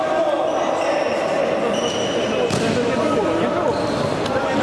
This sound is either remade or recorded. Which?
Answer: recorded